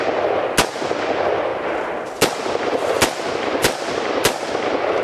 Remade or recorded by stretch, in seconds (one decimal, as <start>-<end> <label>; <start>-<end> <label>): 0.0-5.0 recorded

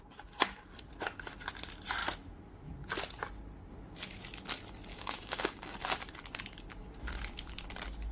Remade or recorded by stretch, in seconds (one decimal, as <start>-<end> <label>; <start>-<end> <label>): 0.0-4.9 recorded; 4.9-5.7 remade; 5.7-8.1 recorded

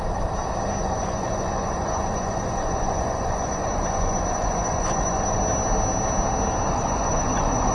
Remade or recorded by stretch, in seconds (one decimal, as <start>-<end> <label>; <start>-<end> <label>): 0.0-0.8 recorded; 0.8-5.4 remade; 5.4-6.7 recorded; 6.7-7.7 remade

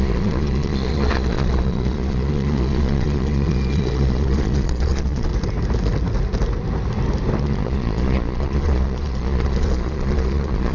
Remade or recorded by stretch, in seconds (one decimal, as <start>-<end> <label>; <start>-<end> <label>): 0.0-5.3 remade; 5.3-7.4 recorded; 7.4-10.7 remade

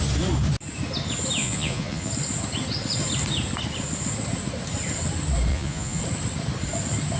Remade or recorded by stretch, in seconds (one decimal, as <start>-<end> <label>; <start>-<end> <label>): 0.0-1.4 recorded; 1.4-2.1 remade; 2.1-5.5 recorded; 5.5-6.0 remade; 6.0-7.2 recorded